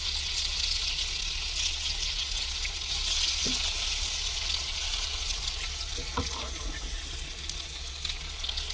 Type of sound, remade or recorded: remade